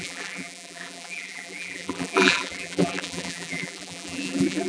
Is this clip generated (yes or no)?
yes